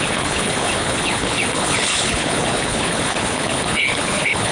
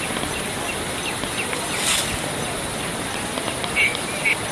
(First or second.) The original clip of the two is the second